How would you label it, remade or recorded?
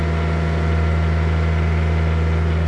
recorded